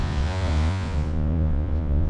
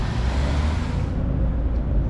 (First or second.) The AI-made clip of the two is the first